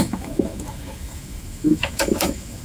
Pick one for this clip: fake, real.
fake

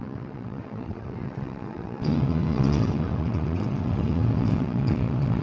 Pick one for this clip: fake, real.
fake